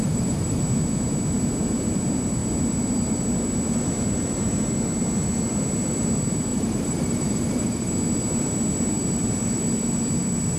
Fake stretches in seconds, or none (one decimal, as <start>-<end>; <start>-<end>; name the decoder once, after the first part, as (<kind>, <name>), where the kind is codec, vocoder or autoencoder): 0.0-0.6 (vocoder, BigVGAN v2); 6.5-7.9